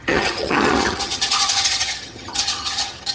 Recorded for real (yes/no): no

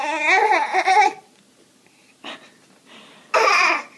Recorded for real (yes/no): yes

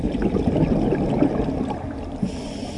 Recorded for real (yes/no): yes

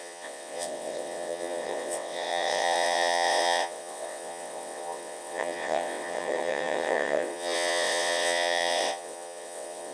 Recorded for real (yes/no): no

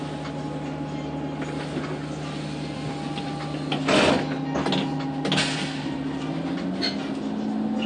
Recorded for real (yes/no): yes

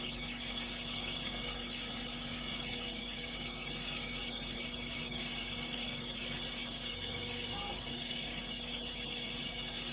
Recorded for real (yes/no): no